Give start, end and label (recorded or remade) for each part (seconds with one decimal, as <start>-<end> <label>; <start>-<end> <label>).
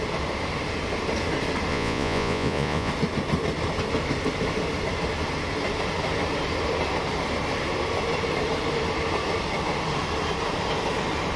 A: 0.0-1.7 recorded; 1.7-2.9 remade; 2.9-11.4 recorded